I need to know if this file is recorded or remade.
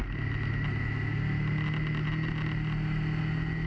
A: recorded